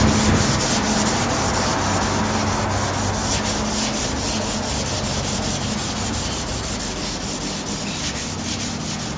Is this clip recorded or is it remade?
recorded